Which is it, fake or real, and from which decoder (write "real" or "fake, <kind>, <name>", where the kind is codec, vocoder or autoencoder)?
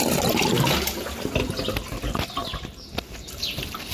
real